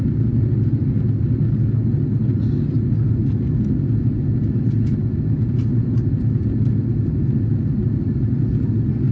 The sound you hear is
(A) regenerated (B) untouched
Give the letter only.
B